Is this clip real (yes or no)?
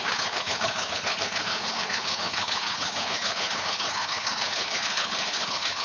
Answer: no